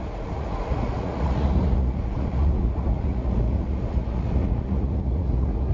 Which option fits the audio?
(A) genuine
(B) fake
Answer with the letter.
B